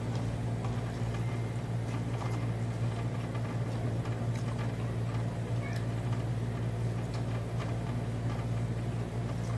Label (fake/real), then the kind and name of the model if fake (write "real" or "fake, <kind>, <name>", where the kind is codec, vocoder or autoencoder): real